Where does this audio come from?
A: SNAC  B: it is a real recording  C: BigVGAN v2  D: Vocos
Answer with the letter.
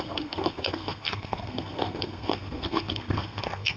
A